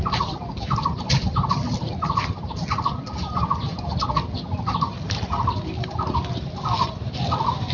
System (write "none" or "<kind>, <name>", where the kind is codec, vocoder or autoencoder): none